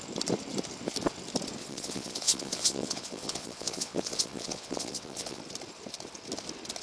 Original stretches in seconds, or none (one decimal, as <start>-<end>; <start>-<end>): 0.0-1.6; 5.4-6.8